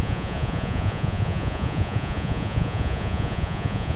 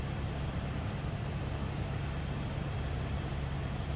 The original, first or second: second